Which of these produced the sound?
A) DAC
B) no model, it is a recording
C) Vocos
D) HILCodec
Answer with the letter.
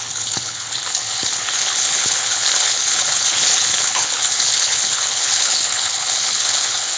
D